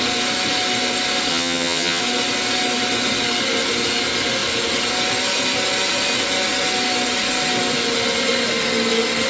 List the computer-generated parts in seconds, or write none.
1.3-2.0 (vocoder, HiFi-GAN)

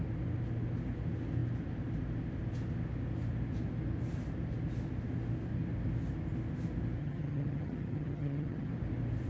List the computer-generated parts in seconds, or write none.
7.0-8.7 (vocoder, HiFi-GAN)

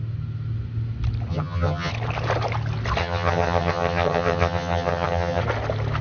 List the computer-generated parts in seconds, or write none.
1.3-1.9 (vocoder, HiFi-GAN); 3.0-5.4

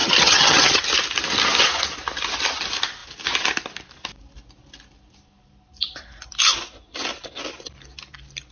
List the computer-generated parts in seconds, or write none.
0.0-0.8 (vocoder, HiFi-GAN)